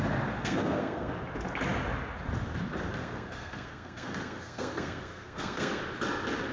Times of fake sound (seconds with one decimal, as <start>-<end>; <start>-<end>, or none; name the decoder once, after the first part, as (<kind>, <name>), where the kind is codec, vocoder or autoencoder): 0.4-1.1 (codec, SNAC); 3.0-5.8